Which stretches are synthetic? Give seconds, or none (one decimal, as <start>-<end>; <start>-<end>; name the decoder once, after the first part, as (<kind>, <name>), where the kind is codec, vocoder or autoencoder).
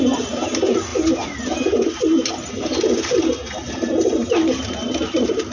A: none